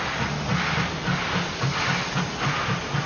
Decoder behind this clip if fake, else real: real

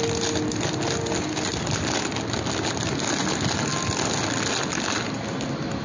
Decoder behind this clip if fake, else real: real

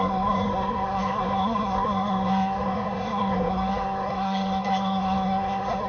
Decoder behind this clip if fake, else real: fake, codec, SNAC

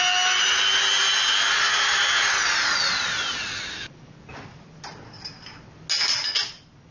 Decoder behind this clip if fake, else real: real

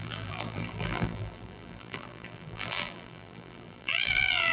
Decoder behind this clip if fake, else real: fake, vocoder, BigVGAN v2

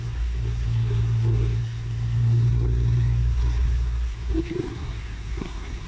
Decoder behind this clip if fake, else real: fake, codec, SNAC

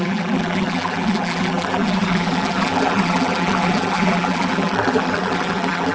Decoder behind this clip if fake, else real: fake, vocoder, BigVGAN v2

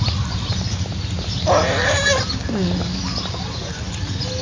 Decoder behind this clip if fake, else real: real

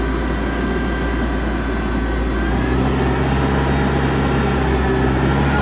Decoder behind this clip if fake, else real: real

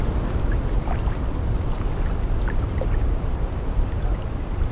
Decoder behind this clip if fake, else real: fake, vocoder, BigVGAN v2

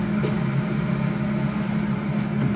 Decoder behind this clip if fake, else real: real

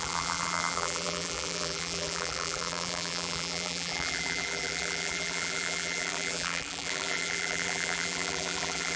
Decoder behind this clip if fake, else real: fake, vocoder, BigVGAN v2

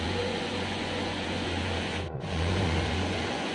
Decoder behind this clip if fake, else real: fake, vocoder, Vocos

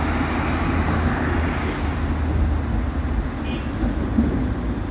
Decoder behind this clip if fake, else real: real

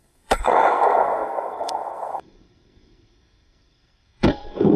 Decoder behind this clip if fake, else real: fake, codec, SNAC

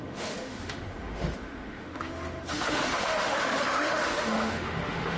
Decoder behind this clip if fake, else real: fake, autoencoder, DAC-VAE